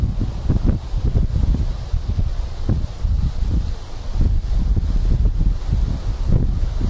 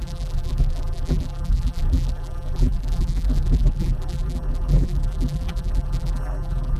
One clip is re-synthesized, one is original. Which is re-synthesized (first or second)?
second